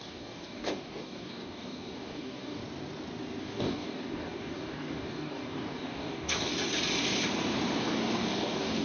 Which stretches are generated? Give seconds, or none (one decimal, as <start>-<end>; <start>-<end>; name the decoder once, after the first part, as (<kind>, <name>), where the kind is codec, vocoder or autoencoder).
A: 0.0-2.6 (codec, DAC); 3.4-6.5; 7.8-8.8